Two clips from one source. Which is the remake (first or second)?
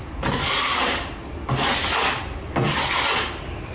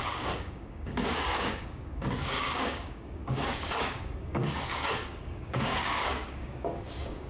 second